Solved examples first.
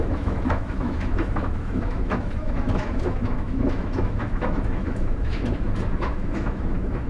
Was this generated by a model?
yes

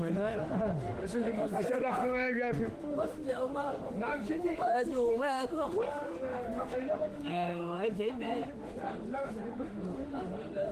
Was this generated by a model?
yes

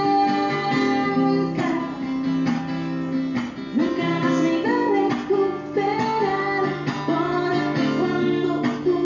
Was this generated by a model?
no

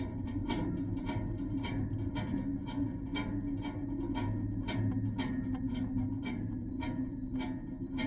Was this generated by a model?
no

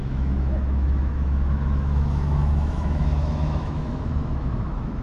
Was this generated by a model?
yes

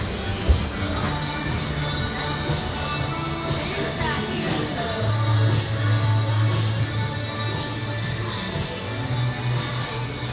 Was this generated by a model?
no